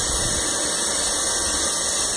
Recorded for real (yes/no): yes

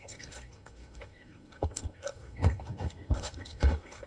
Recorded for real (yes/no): no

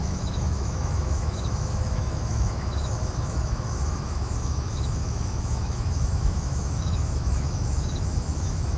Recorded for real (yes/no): no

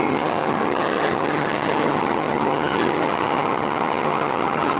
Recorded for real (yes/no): no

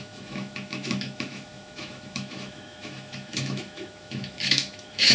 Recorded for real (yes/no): no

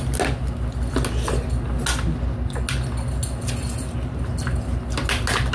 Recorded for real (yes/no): yes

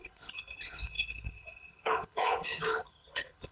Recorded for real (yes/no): no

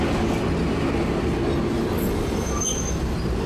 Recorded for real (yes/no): yes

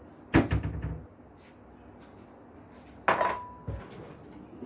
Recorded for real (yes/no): yes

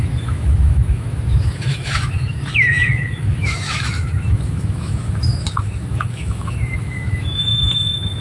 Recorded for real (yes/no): no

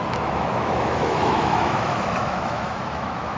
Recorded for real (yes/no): no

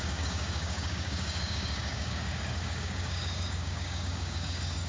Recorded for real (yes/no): no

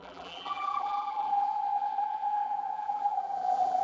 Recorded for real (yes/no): no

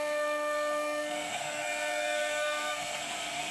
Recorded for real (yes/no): no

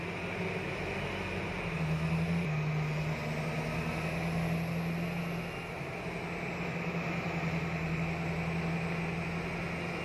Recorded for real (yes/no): yes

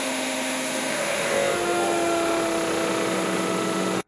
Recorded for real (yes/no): no